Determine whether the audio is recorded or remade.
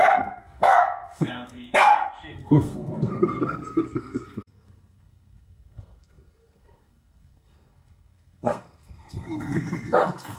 remade